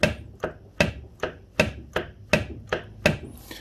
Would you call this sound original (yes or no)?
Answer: yes